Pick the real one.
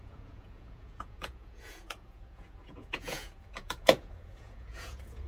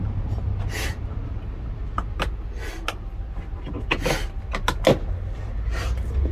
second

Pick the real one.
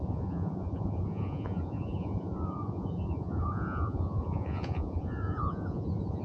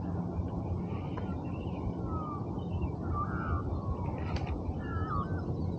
second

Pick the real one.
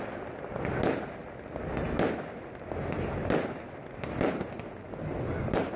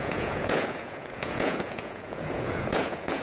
first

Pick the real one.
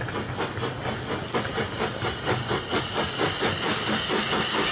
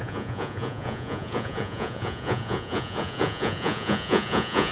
first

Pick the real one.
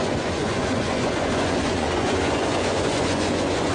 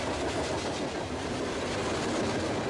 second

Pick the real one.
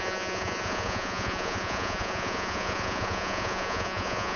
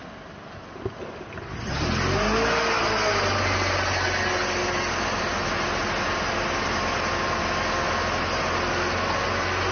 second